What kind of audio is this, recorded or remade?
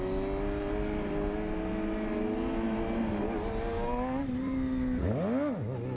recorded